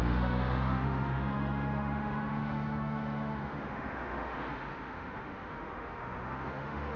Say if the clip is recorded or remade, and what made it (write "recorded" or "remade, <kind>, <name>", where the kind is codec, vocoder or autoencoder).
remade, autoencoder, DAC-VAE